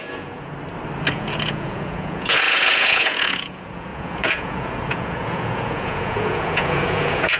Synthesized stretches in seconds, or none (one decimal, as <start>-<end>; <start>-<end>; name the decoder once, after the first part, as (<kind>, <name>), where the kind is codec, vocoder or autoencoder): 0.0-0.5 (vocoder, Vocos); 1.1-7.4